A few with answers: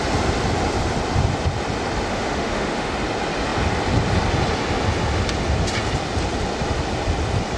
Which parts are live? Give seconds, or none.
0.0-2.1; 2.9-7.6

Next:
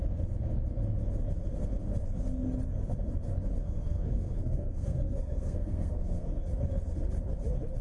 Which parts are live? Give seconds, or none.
0.0-3.6; 6.3-7.8

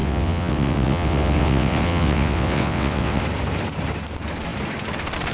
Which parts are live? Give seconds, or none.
3.2-5.3